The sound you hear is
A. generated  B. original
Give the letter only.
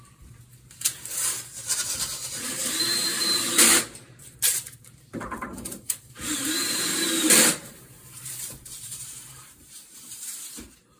A